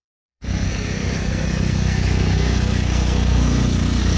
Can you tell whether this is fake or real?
fake